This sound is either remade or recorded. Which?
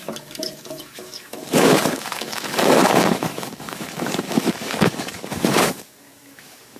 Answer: remade